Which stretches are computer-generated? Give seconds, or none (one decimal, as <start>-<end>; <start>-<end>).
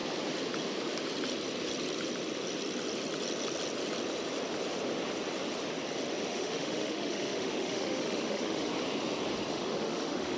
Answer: 6.3-8.7; 9.5-10.4